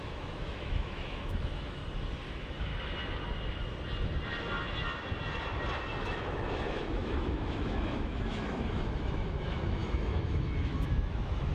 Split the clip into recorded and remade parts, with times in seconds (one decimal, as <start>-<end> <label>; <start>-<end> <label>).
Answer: 0.0-1.8 remade; 1.8-2.3 recorded; 2.3-2.7 remade; 2.7-6.0 recorded; 6.0-11.5 remade